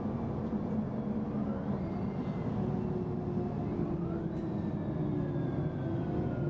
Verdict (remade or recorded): recorded